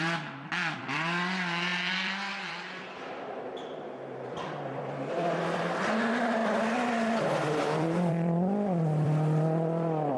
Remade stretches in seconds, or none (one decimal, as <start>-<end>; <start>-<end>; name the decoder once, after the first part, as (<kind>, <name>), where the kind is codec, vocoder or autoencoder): 0.0-10.2 (vocoder, BigVGAN v2)